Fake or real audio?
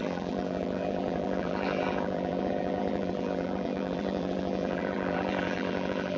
fake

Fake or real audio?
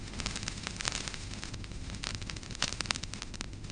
fake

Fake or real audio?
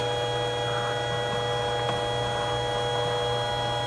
real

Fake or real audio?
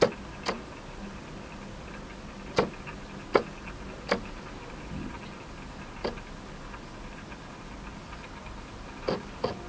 real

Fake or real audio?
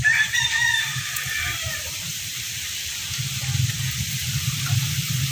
fake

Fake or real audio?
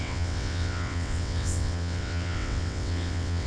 fake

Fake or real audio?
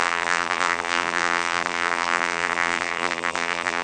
fake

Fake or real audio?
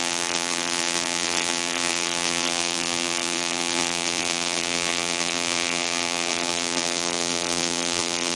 fake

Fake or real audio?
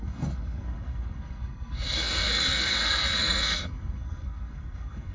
fake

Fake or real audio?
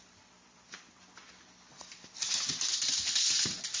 real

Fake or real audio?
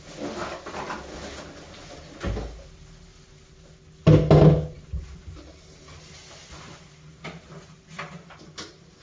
real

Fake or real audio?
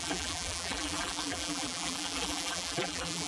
fake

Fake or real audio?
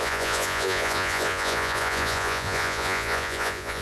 fake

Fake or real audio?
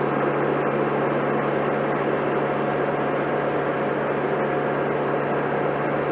real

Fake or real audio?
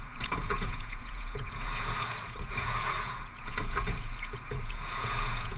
fake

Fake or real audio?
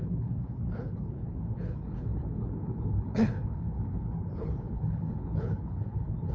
fake